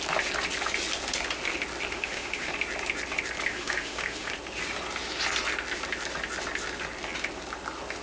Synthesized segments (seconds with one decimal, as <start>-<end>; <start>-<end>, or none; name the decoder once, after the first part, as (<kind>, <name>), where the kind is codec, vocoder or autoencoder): 1.9-2.5 (autoencoder, DAC-VAE); 3.5-4.3